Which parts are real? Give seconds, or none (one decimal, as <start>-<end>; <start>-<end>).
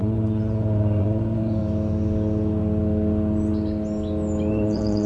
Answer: 1.6-4.5